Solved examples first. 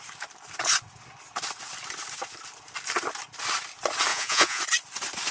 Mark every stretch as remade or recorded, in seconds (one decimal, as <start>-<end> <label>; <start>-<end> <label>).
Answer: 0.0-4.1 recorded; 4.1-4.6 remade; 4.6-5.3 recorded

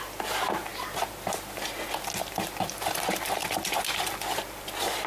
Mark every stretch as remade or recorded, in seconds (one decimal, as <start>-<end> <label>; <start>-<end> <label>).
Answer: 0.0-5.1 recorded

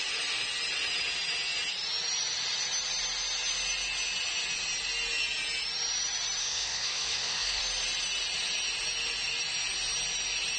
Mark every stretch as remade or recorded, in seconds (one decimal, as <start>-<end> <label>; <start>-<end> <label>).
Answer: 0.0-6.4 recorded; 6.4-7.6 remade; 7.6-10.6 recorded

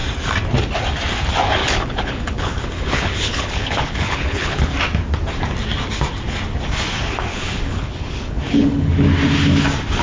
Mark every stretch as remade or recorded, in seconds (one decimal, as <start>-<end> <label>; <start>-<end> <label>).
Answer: 0.0-1.6 recorded; 1.6-4.7 remade; 4.7-7.3 recorded; 7.3-8.9 remade; 8.9-10.0 recorded